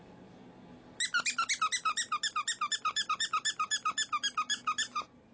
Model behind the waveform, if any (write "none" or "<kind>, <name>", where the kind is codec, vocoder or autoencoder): none